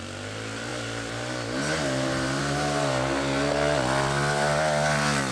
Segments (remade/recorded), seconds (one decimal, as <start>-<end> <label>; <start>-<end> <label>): 0.0-5.3 recorded